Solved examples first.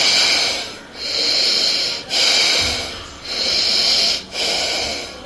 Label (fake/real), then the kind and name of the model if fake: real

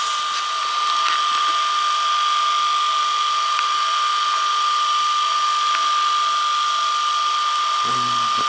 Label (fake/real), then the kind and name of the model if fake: real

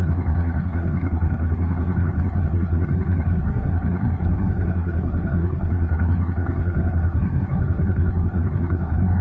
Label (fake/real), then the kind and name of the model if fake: fake, codec, SNAC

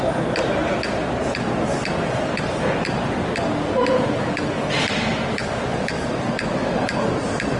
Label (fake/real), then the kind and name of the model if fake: real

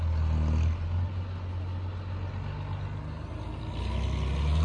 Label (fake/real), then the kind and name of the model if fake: real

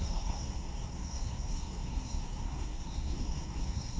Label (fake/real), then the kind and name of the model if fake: fake, codec, SNAC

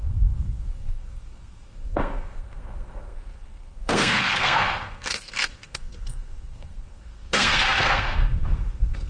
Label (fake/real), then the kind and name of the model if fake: fake, codec, SNAC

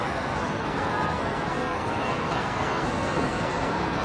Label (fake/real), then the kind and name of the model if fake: fake, codec, SNAC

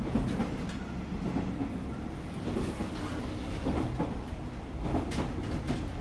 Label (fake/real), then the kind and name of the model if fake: real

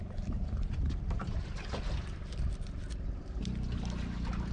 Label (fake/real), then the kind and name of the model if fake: real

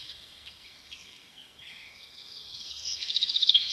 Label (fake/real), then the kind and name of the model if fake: fake, codec, SNAC